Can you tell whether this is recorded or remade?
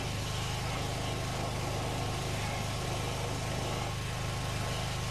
recorded